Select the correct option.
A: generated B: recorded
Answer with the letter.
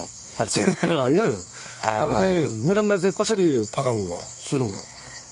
A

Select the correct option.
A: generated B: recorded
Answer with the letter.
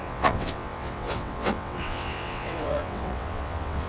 A